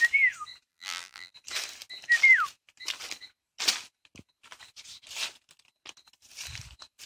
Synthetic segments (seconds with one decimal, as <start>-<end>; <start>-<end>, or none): 0.7-1.3